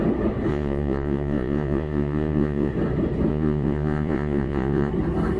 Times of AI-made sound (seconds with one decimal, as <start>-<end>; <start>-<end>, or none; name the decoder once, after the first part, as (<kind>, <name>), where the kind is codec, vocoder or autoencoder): 0.5-2.7 (vocoder, Vocos); 3.3-4.9